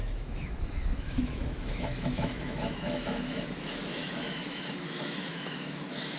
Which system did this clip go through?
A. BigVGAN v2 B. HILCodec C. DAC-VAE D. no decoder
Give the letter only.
C